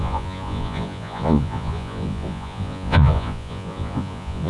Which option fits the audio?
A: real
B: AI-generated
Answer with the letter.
B